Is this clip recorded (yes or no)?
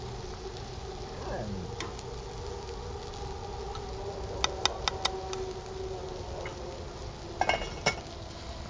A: yes